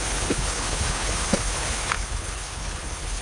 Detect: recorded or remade remade